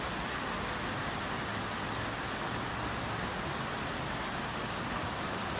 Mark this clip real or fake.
real